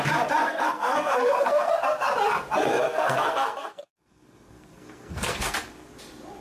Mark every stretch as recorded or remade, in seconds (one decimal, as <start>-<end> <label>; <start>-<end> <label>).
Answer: 0.0-0.4 recorded; 0.4-1.7 remade; 1.7-2.7 recorded; 2.7-5.9 remade; 5.9-6.4 recorded